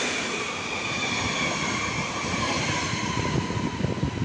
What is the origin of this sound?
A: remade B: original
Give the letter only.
B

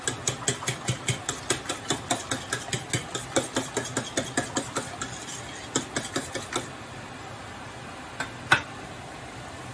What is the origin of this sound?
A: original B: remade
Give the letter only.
A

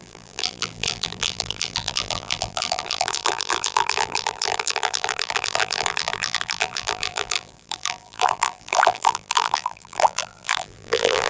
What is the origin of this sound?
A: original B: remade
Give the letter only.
B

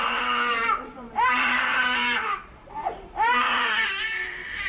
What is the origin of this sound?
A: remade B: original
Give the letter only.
A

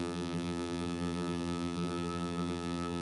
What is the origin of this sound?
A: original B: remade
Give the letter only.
B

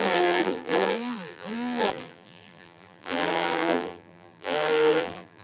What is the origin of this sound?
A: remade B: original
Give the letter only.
A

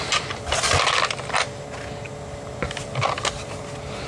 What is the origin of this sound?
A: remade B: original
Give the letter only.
B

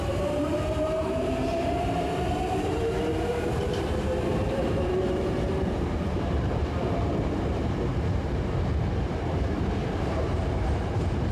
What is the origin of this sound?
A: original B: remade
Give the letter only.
B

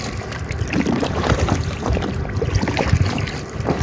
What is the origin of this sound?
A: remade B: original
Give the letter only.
A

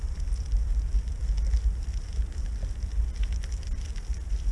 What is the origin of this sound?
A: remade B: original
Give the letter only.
B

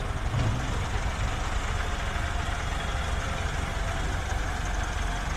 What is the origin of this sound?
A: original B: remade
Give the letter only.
A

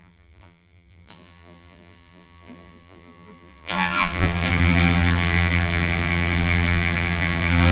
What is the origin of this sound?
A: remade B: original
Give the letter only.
A